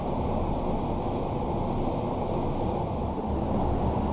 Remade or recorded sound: recorded